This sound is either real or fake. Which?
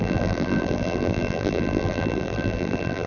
fake